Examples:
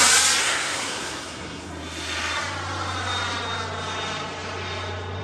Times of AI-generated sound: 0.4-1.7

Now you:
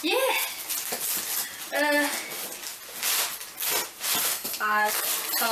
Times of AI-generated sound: 4.3-4.9